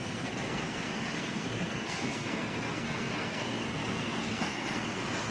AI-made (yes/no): yes